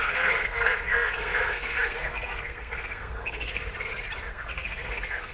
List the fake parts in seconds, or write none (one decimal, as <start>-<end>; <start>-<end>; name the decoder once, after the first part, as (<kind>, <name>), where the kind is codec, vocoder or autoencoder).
0.0-3.7 (codec, SNAC); 4.3-5.3